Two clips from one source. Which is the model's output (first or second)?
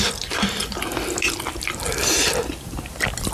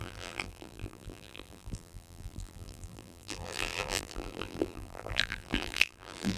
second